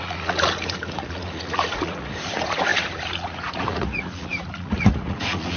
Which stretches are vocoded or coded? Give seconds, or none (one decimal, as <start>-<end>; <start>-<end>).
0.0-5.6